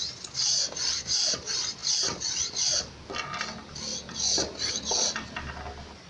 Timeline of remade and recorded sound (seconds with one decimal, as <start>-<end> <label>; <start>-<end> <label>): 0.0-6.1 recorded